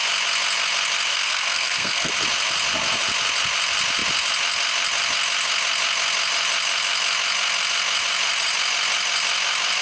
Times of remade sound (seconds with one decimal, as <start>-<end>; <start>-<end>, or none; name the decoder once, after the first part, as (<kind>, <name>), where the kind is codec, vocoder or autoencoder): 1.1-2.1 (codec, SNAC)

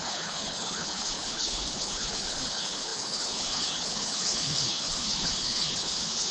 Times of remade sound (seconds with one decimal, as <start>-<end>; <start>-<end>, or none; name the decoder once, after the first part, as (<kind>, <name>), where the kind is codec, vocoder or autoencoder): 0.0-6.3 (codec, HILCodec)

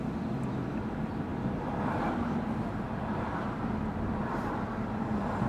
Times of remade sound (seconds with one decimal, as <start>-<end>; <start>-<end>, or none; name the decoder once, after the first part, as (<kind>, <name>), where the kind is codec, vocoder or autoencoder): 0.0-5.5 (vocoder, BigVGAN v2)